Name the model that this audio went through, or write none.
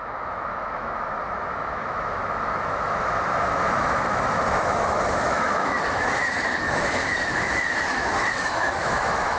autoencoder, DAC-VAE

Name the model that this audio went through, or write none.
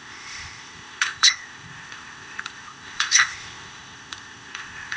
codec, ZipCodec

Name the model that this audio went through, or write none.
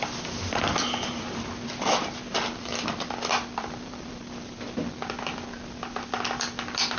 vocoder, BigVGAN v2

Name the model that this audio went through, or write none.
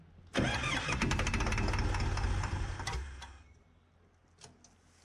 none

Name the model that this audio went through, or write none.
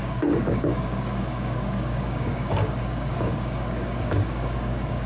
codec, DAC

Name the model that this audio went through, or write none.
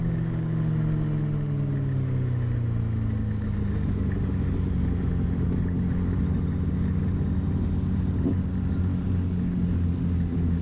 none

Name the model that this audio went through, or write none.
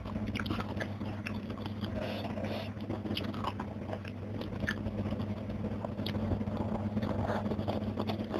none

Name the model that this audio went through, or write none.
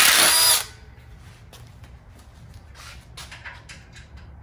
none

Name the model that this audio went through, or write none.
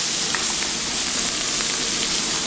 none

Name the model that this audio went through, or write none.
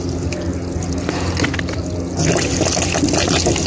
none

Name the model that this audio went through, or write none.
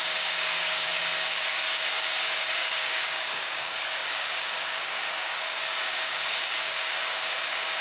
codec, DAC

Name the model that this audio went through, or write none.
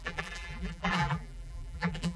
vocoder, BigVGAN v2